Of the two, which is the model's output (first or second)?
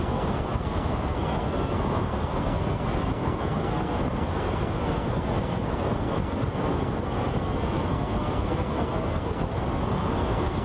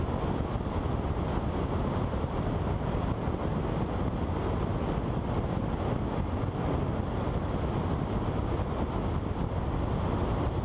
first